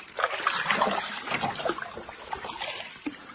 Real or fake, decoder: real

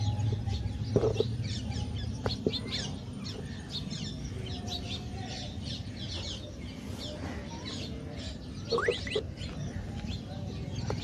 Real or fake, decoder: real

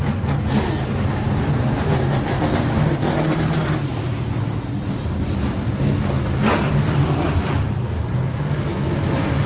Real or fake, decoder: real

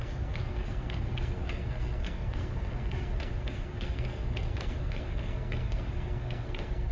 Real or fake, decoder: fake, codec, SNAC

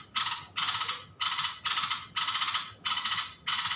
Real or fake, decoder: real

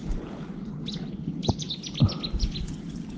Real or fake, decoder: real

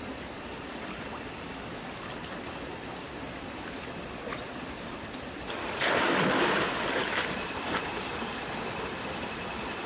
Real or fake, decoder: fake, vocoder, BigVGAN v2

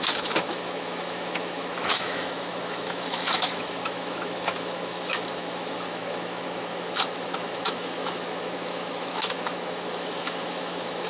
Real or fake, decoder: fake, autoencoder, DAC-VAE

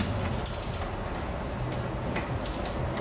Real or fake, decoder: real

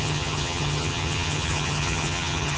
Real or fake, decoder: fake, vocoder, HiFi-GAN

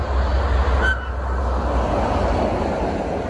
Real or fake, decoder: real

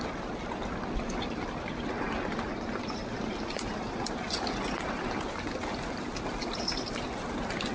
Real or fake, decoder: real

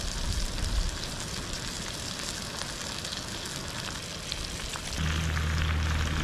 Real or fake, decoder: real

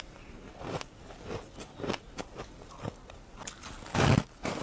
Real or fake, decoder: real